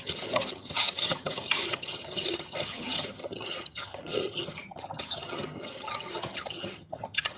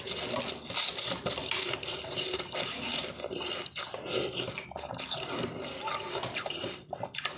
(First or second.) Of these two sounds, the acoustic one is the second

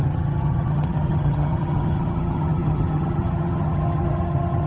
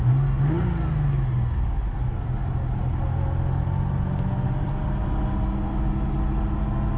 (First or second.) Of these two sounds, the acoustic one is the second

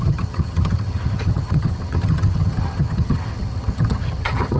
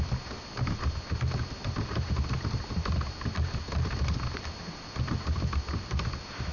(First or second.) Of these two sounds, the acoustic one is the second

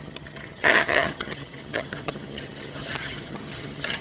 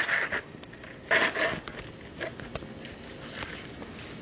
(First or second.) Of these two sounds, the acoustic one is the second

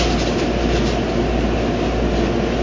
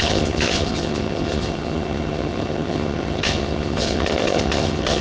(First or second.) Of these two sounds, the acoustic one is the first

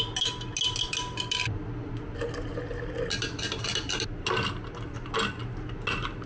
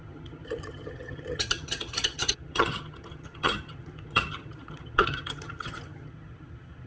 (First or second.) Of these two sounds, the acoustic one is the first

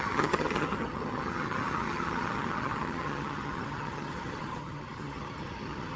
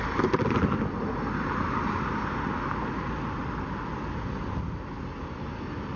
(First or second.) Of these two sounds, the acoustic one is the second